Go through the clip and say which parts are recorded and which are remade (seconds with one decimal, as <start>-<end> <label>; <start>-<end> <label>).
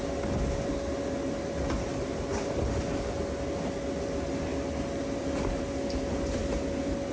0.0-7.1 recorded